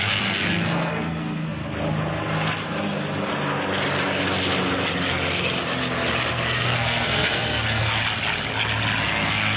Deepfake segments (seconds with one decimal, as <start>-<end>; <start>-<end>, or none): 0.0-1.6; 6.3-8.0; 9.0-9.6